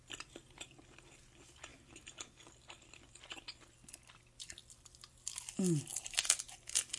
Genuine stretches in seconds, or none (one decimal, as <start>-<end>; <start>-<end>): 0.0-7.0